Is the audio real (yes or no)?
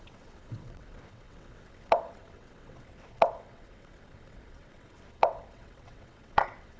no